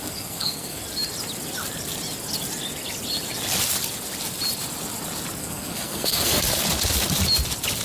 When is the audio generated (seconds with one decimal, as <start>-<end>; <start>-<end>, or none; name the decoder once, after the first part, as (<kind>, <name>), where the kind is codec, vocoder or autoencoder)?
0.0-0.8 (codec, SNAC); 5.4-6.4